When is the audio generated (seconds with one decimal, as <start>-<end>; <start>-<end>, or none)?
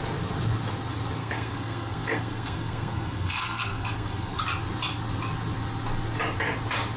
1.2-4.4